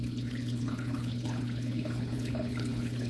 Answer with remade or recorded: remade